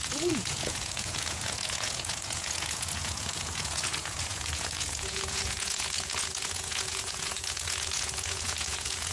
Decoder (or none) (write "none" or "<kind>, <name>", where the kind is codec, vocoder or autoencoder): vocoder, Vocos